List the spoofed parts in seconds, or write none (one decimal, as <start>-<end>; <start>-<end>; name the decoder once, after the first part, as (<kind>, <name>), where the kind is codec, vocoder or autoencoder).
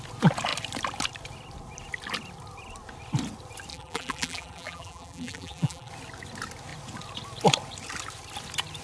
3.7-5.9 (vocoder, BigVGAN v2)